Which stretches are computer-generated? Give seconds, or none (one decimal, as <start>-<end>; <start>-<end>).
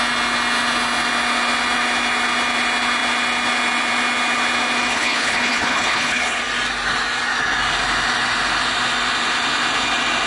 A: 4.9-6.4